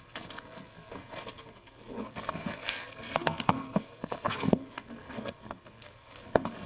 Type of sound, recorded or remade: remade